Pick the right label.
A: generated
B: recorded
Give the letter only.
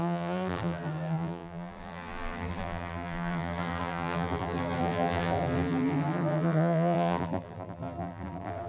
A